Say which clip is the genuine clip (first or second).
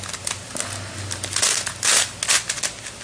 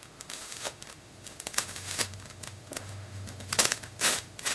first